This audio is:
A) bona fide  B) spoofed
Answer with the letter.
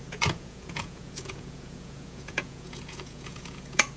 B